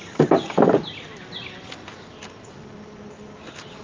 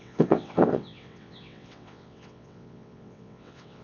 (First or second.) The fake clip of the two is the second